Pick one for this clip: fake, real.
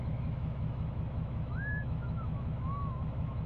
fake